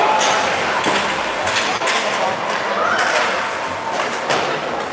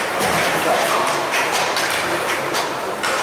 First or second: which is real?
first